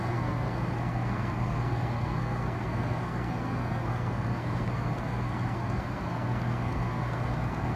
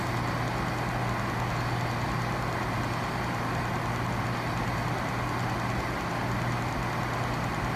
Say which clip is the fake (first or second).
first